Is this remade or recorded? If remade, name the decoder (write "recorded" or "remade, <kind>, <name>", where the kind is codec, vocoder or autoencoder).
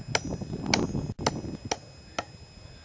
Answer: recorded